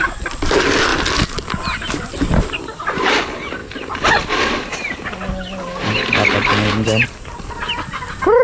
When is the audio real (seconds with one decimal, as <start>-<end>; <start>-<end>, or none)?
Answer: 0.0-8.4

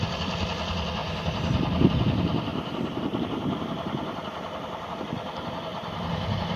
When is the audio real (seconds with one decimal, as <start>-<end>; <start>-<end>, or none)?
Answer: 0.0-1.0; 1.9-2.5; 4.9-5.7

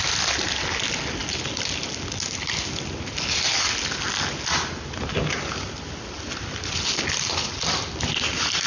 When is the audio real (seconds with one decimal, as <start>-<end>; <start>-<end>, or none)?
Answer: 0.0-8.7

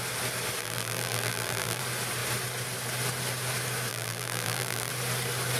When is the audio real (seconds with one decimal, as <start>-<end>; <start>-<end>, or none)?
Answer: 0.0-0.6; 1.8-3.9; 4.9-5.6

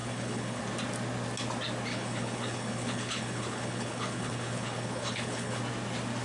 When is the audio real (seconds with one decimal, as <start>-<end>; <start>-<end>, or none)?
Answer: 0.6-1.9; 5.6-6.2

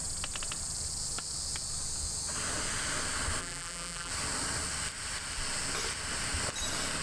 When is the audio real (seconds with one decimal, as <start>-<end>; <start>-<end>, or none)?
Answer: 0.0-3.4; 4.1-7.0